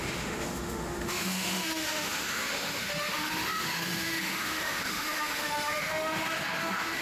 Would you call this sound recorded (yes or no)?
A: no